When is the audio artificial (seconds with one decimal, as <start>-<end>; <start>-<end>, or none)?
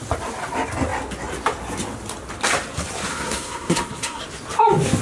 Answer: 3.1-4.2